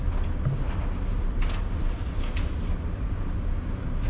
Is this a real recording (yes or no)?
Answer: yes